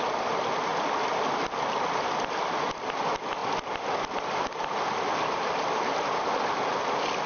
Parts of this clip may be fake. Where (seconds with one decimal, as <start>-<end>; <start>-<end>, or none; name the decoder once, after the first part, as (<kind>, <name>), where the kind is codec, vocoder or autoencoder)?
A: none